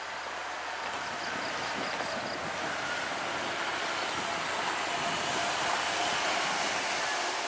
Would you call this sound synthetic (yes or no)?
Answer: no